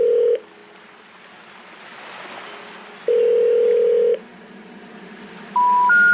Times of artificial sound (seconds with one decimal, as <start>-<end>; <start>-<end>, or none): none